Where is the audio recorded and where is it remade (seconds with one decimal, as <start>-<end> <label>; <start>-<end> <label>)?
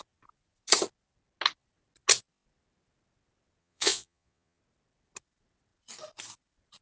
0.0-3.6 recorded; 3.6-4.6 remade; 4.6-6.8 recorded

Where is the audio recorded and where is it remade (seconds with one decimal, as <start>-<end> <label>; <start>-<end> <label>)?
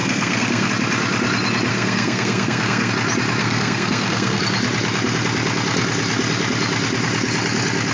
0.0-0.7 remade; 0.7-1.7 recorded; 1.7-2.9 remade; 2.9-3.4 recorded; 3.4-4.4 remade; 4.4-7.9 recorded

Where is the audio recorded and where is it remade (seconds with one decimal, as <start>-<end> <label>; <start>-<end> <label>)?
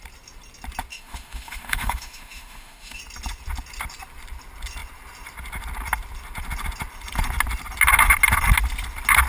0.0-0.9 recorded; 0.9-3.0 remade; 3.0-9.3 recorded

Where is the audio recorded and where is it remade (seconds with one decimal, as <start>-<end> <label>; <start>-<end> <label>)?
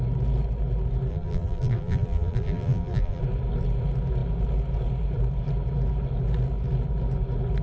0.0-1.1 recorded; 1.1-3.2 remade; 3.2-7.6 recorded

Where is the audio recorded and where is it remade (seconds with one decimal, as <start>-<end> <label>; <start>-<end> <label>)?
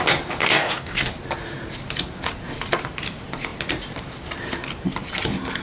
0.0-0.4 recorded; 0.4-1.1 remade; 1.1-5.6 recorded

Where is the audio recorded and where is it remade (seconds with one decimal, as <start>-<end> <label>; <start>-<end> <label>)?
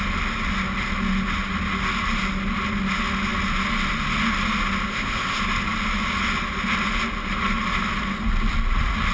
0.0-4.9 recorded; 4.9-5.4 remade; 5.4-9.1 recorded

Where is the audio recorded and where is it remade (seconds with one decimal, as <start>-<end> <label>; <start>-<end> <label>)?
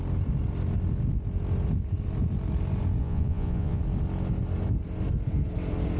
0.0-3.0 recorded; 3.0-3.8 remade; 3.8-6.0 recorded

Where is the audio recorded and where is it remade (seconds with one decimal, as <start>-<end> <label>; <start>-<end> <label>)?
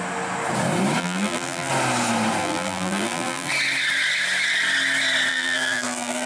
0.0-1.0 recorded; 1.0-1.7 remade; 1.7-2.4 recorded; 2.4-3.5 remade; 3.5-5.3 recorded; 5.3-6.3 remade